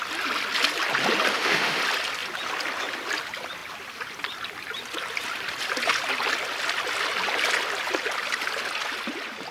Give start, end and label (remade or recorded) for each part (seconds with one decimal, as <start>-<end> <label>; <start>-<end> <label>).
0.0-1.3 recorded; 1.3-1.8 remade; 1.8-9.5 recorded